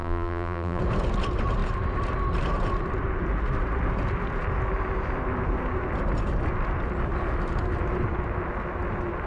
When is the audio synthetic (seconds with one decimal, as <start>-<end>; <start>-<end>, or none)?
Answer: 0.0-0.8